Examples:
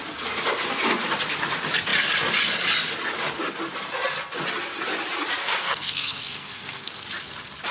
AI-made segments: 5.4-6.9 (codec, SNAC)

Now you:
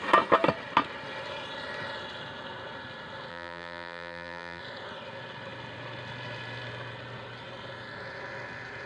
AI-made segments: 3.3-4.6 (vocoder, BigVGAN v2)